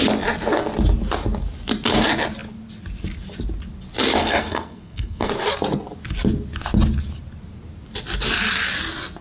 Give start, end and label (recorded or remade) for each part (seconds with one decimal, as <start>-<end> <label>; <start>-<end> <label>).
0.0-4.2 recorded; 4.2-5.3 remade; 5.3-9.2 recorded